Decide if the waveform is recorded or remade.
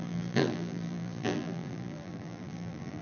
remade